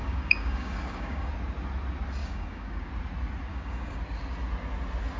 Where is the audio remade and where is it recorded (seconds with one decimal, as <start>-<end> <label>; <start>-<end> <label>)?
0.0-1.3 remade; 1.3-2.2 recorded; 2.2-2.9 remade; 2.9-3.5 recorded; 3.5-4.0 remade; 4.0-5.2 recorded